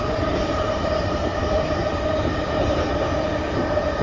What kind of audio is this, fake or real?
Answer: fake